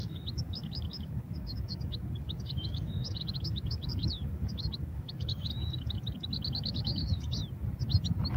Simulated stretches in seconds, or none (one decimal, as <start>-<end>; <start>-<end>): 0.0-7.4